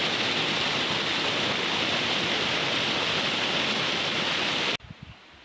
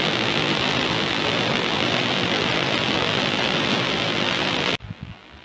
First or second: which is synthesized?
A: second